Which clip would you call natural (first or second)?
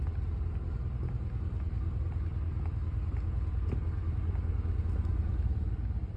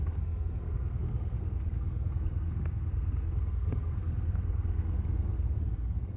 first